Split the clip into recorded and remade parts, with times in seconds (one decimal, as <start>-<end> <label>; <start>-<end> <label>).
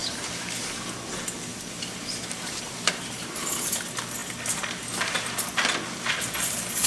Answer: 0.0-1.5 recorded; 1.5-3.7 remade; 3.7-6.9 recorded